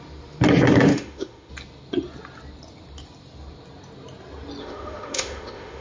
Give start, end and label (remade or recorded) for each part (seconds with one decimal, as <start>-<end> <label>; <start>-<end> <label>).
0.0-0.9 recorded; 0.9-1.5 remade; 1.5-4.6 recorded; 4.6-5.8 remade